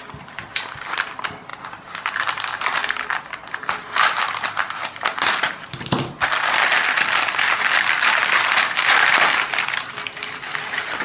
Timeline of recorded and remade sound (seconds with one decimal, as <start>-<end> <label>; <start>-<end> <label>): 0.0-11.0 recorded

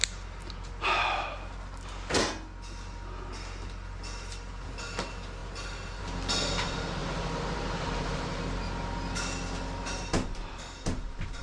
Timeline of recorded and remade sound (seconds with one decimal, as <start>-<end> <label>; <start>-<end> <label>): 0.0-7.0 recorded; 7.0-8.4 remade; 8.4-11.4 recorded

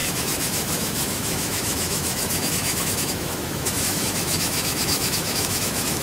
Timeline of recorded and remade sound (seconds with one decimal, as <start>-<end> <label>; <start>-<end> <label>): 0.0-6.0 remade

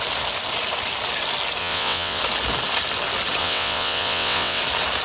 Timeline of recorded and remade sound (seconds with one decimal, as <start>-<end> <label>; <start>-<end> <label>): 0.0-1.6 recorded; 1.6-2.2 remade; 2.2-3.4 recorded; 3.4-4.6 remade; 4.6-5.0 recorded

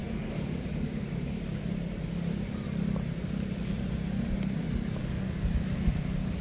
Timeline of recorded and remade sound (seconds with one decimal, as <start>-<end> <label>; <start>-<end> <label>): 0.0-1.6 remade; 1.6-4.6 recorded; 4.6-6.4 remade

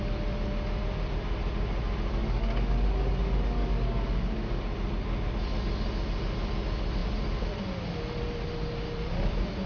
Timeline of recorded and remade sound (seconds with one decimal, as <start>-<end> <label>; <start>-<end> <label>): 0.0-2.2 recorded; 2.2-4.6 remade; 4.6-9.7 recorded